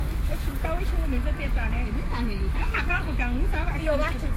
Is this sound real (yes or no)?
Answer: no